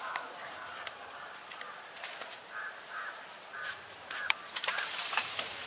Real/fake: fake